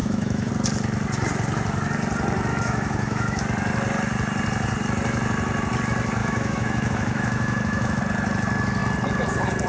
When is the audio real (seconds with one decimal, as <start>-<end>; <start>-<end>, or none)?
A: 0.5-2.5; 3.4-6.2; 8.0-9.7